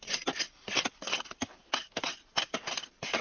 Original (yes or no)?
yes